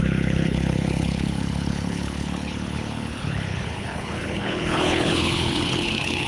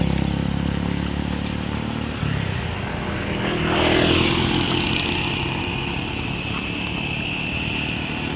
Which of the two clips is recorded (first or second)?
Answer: second